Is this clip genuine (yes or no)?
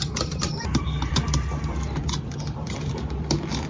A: no